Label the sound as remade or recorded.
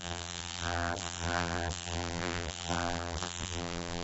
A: remade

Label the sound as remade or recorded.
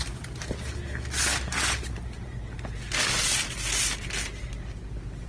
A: recorded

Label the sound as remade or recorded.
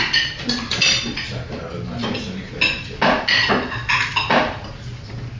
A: recorded